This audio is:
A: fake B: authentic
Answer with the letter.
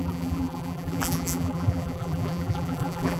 A